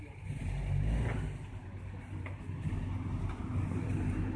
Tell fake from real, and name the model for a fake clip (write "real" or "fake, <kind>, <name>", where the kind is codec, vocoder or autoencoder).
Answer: real